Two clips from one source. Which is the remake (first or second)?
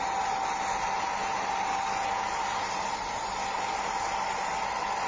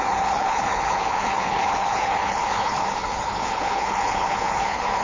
second